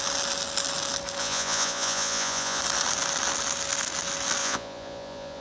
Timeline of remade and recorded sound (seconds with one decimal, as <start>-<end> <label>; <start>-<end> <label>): 0.0-1.2 recorded; 1.2-2.6 remade; 2.6-4.4 recorded; 4.4-5.4 remade